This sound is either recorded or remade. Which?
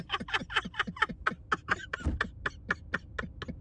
recorded